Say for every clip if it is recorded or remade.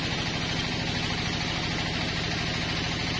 recorded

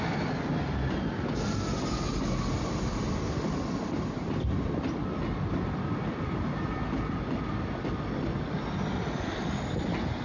recorded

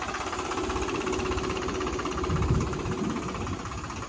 recorded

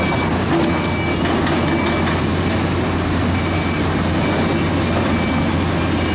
recorded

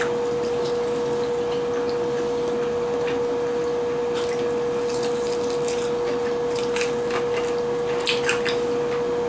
recorded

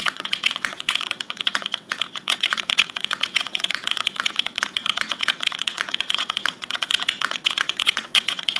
remade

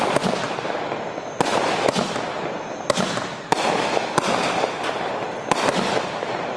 recorded